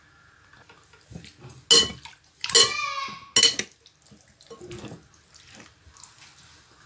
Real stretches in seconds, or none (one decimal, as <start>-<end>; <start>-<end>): 0.0-6.9